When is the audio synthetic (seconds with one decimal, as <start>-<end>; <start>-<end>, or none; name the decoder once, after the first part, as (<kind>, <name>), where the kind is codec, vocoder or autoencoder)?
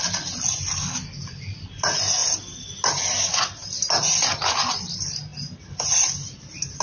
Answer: none